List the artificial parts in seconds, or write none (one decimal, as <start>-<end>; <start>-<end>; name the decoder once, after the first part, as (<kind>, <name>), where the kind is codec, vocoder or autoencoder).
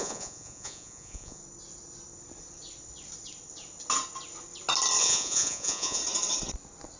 0.0-1.4 (vocoder, Vocos); 5.0-6.0